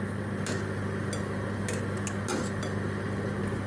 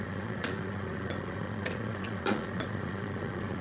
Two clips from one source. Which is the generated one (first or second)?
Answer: second